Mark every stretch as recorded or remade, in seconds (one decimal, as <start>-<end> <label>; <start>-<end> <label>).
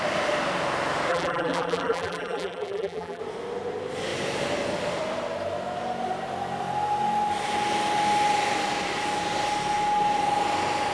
0.0-1.1 recorded; 1.1-3.2 remade; 3.2-10.9 recorded